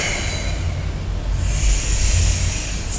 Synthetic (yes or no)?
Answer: no